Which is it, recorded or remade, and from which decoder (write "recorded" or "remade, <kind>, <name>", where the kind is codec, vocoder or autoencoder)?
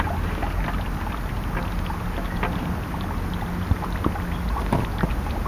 recorded